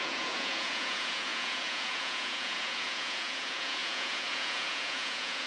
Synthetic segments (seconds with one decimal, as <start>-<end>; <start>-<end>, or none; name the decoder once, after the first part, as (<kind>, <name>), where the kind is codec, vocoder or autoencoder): 0.0-5.5 (vocoder, Vocos)